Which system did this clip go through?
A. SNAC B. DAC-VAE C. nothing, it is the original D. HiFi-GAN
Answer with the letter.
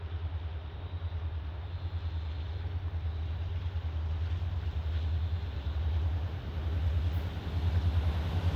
C